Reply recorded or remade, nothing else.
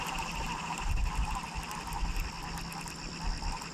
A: recorded